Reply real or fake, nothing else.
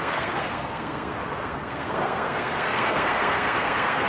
fake